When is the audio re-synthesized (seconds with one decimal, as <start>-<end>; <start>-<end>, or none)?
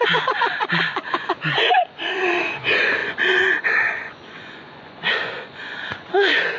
0.0-6.6